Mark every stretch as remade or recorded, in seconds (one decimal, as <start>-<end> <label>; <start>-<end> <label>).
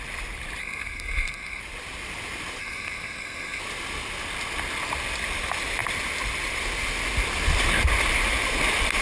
0.0-0.6 recorded; 0.6-1.6 remade; 1.6-2.6 recorded; 2.6-3.6 remade; 3.6-9.0 recorded